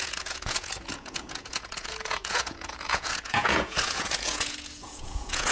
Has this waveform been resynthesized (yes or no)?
yes